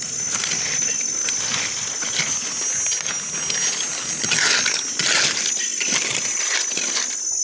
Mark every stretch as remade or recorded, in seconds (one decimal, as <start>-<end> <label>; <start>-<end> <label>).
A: 0.0-7.4 recorded